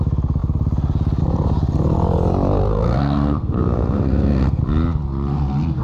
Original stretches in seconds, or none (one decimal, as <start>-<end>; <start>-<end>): 0.0-2.7; 4.6-5.8